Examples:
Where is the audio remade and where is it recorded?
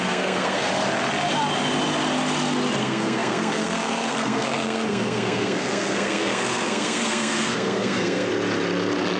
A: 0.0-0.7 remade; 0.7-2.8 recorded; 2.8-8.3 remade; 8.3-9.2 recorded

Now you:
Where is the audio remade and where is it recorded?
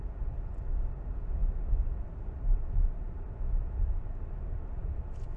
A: 0.0-5.4 recorded